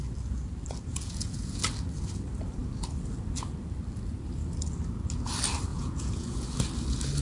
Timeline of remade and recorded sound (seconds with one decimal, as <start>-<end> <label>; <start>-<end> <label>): 0.0-0.9 recorded; 0.9-1.6 remade; 1.6-5.7 recorded; 5.7-6.5 remade; 6.5-7.2 recorded